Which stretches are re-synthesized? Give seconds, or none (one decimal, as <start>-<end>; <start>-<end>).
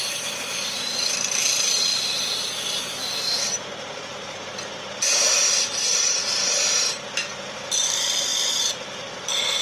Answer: 0.0-9.6